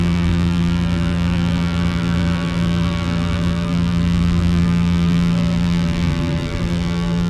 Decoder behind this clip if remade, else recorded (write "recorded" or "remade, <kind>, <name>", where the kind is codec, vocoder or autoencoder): remade, vocoder, BigVGAN v2